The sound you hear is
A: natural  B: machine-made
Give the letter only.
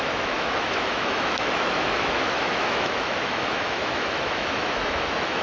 B